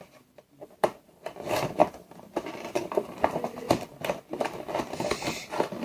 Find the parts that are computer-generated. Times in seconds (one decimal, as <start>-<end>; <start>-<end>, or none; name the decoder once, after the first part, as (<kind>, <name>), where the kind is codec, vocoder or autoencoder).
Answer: 1.8-2.8 (vocoder, BigVGAN v2)